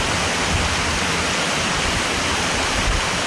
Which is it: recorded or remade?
recorded